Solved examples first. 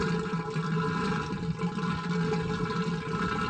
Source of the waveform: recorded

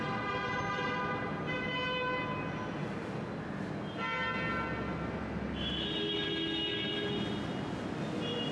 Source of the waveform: recorded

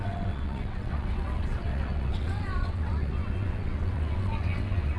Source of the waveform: remade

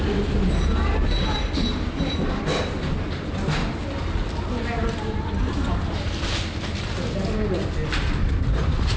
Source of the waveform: recorded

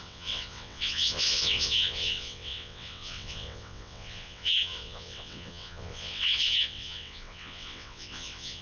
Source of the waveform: remade